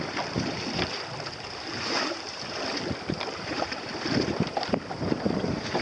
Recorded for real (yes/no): yes